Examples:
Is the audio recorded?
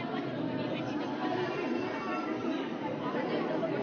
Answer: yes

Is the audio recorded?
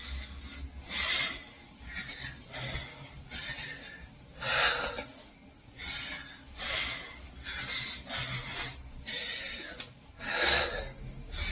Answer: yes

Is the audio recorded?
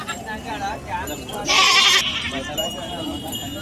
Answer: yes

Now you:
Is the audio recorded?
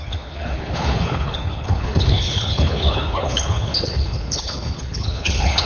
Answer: no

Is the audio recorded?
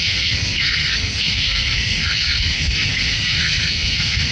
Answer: no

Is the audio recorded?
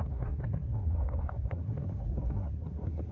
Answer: no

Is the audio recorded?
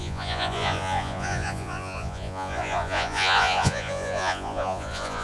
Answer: no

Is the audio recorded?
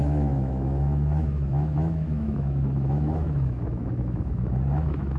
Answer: no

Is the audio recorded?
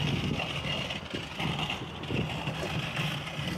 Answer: yes